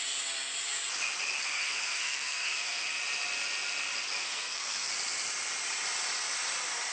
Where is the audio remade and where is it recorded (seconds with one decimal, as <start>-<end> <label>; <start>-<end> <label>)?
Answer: 0.0-1.4 recorded; 1.4-3.0 remade; 3.0-4.2 recorded; 4.2-4.9 remade; 4.9-6.9 recorded